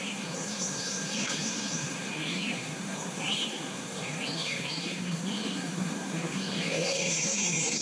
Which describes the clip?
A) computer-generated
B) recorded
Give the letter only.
A